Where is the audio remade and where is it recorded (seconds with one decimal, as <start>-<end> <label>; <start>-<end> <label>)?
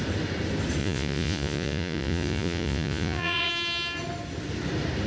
0.0-0.8 recorded; 0.8-3.5 remade; 3.5-5.1 recorded